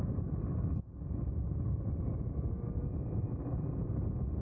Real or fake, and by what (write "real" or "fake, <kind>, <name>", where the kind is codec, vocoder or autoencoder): real